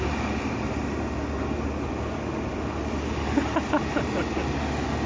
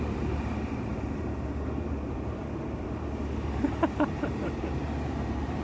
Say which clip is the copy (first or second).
second